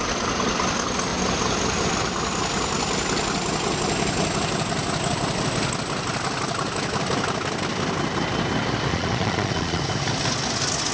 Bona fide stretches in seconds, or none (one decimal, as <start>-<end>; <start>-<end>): 0.0-8.9; 9.8-10.9